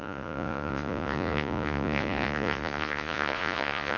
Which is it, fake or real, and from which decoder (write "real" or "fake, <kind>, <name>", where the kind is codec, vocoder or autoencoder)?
fake, vocoder, Vocos